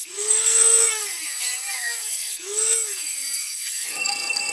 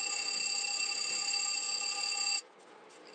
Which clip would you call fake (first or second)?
first